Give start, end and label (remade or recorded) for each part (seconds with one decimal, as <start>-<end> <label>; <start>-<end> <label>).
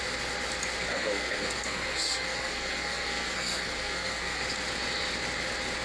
0.0-0.9 recorded; 0.9-4.4 remade; 4.4-5.8 recorded